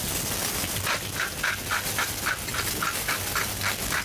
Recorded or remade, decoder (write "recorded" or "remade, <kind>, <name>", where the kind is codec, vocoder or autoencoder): recorded